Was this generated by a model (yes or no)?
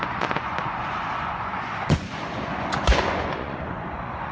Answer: yes